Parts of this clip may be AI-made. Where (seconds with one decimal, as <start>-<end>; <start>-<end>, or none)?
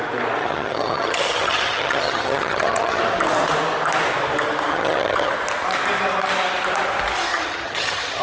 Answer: 0.4-3.0; 4.7-5.3; 7.3-8.2